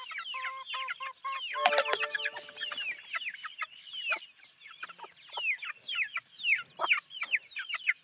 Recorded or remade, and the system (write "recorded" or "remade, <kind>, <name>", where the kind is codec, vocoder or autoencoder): recorded